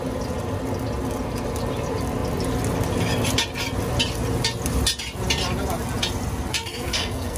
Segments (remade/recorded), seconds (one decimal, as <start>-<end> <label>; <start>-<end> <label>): 0.0-6.5 recorded; 6.5-7.4 remade